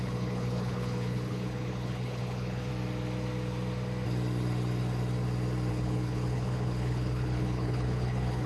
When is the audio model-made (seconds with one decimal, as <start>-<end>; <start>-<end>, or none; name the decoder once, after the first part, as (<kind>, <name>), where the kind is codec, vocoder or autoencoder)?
0.0-2.7 (codec, HILCodec); 5.7-8.5